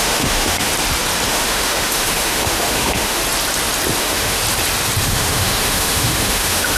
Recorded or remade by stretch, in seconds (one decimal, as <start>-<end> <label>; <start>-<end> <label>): 0.0-0.7 remade; 0.7-1.3 recorded; 1.3-3.2 remade; 3.2-4.0 recorded; 4.0-4.4 remade; 4.4-5.0 recorded; 5.0-6.8 remade